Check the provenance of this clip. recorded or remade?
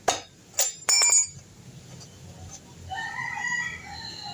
recorded